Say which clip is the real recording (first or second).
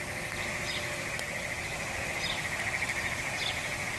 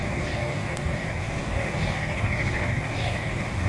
first